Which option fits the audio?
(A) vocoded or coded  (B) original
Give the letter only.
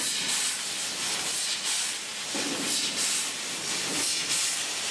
B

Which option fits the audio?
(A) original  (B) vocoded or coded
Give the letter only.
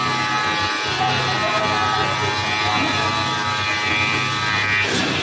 A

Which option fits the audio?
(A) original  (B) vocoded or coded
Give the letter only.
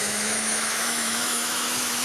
B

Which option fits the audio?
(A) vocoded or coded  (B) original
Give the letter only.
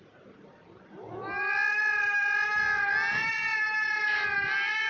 B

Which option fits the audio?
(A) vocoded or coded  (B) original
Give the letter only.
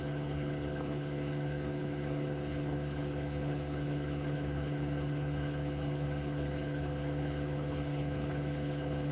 A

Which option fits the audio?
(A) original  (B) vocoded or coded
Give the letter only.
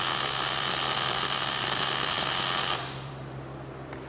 B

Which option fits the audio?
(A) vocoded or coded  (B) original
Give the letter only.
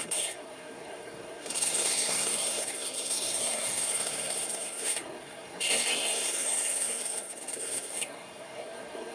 A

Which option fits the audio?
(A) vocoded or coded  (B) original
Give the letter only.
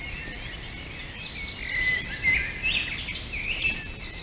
B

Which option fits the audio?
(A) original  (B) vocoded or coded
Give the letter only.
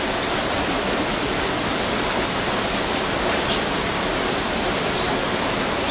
B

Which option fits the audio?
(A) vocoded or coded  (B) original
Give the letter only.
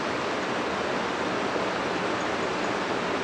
B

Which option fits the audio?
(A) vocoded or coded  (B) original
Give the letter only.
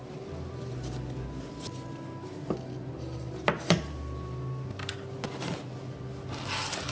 B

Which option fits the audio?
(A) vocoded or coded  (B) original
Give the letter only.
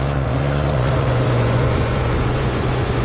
A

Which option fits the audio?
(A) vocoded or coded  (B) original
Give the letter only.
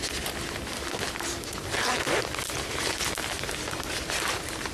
B